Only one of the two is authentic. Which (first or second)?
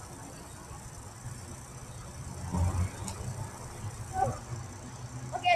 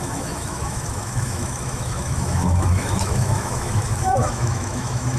first